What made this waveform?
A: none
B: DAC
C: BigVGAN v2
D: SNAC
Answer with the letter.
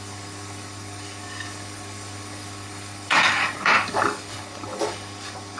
B